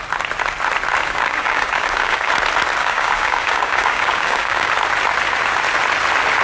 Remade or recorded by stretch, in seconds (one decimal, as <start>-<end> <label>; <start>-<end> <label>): 0.0-1.0 recorded; 1.0-2.3 remade; 2.3-2.8 recorded; 2.8-4.7 remade; 4.7-6.4 recorded